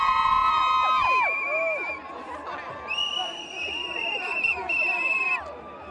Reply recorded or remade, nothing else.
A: recorded